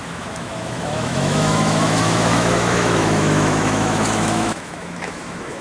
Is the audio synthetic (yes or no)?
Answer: yes